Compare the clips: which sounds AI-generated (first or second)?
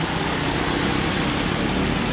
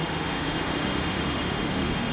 second